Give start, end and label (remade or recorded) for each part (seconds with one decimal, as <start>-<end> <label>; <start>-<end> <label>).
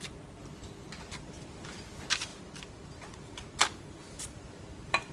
0.0-2.3 recorded; 2.3-3.3 remade; 3.3-5.1 recorded